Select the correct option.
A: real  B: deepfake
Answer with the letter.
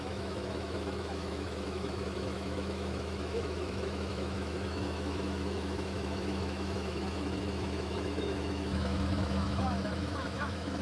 B